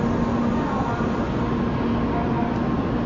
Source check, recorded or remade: recorded